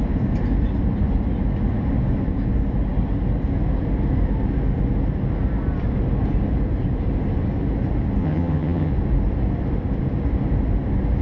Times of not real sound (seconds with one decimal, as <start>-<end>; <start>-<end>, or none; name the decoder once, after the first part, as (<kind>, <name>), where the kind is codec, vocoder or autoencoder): 8.2-8.9 (vocoder, HiFi-GAN)